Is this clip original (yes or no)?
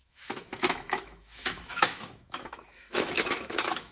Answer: no